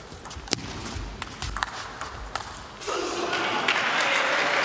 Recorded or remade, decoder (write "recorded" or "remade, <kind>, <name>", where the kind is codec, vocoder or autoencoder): recorded